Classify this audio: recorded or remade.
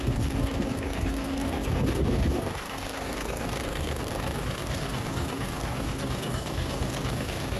remade